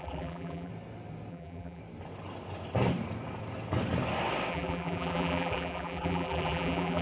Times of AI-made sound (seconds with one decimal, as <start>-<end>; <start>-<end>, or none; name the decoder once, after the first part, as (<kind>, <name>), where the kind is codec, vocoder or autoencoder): 0.0-0.7 (vocoder, BigVGAN v2); 1.3-1.8; 4.5-7.0